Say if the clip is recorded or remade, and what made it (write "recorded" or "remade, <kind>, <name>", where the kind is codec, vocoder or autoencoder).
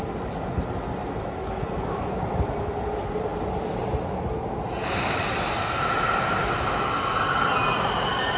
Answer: recorded